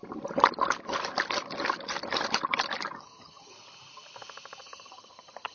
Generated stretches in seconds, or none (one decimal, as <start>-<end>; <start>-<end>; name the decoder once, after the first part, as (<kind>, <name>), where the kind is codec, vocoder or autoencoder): 3.0-3.5 (vocoder, HiFi-GAN); 4.6-5.5